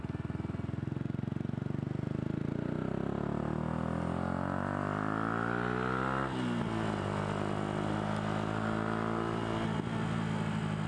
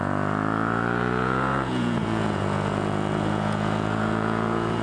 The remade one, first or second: second